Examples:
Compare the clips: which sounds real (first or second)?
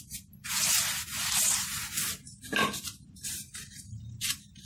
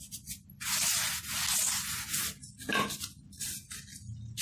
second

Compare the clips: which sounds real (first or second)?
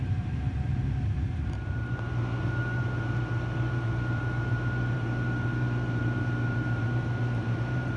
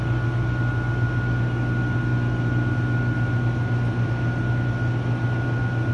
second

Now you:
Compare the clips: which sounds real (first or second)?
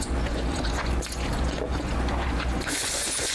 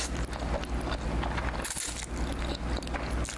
second